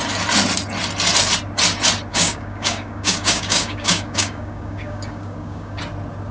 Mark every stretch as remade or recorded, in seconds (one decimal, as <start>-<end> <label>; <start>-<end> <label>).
0.0-2.1 recorded; 2.1-5.8 remade; 5.8-6.3 recorded

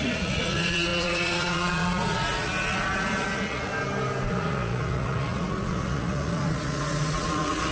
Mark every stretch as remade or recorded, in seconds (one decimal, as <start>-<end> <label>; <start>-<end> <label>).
0.0-3.7 remade; 3.7-4.3 recorded; 4.3-7.7 remade

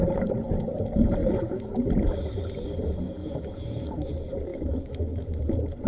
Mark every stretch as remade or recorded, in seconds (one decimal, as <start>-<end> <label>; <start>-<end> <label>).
0.0-1.2 recorded; 1.2-1.9 remade; 1.9-3.2 recorded; 3.2-4.1 remade; 4.1-4.5 recorded; 4.5-5.5 remade; 5.5-5.9 recorded

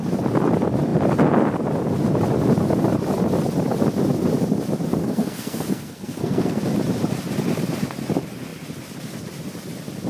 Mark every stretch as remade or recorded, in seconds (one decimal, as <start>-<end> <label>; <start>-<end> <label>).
0.0-5.0 recorded; 5.0-6.6 remade; 6.6-10.1 recorded

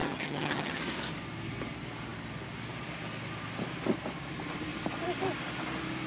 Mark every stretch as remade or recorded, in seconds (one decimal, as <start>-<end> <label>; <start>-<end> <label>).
0.0-0.8 remade; 0.8-6.1 recorded